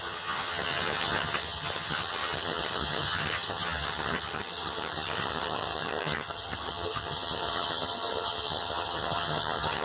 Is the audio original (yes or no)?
no